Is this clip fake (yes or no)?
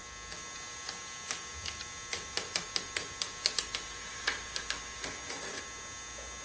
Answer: no